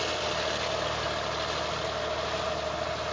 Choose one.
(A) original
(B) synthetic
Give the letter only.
A